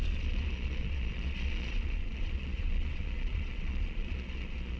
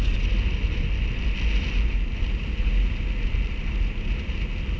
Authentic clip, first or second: second